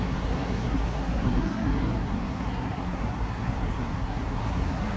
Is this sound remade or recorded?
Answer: remade